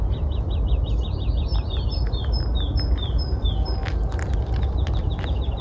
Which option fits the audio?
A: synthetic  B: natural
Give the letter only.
B